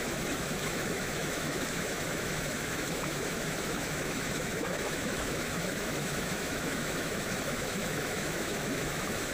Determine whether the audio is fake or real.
fake